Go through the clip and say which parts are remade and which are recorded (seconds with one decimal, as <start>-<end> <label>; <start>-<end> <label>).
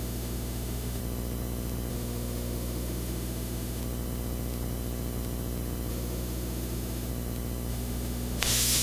0.0-1.0 remade; 1.0-1.9 recorded; 1.9-3.8 remade; 3.8-5.9 recorded; 5.9-7.1 remade; 7.1-7.7 recorded; 7.7-8.8 remade